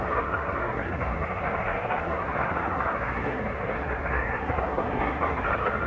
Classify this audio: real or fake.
fake